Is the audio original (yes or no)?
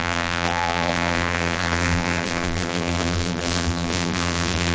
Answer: no